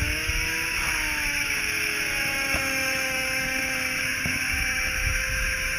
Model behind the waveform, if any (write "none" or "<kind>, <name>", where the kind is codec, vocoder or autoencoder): autoencoder, DAC-VAE